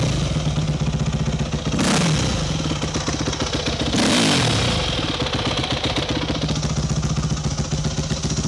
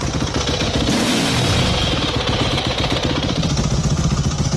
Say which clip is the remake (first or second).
second